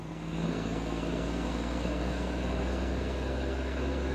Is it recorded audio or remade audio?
remade